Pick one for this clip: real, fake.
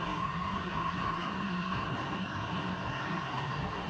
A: fake